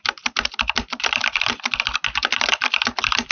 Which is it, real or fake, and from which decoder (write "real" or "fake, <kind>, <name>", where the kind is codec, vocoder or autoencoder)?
real